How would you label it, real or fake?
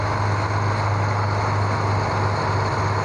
real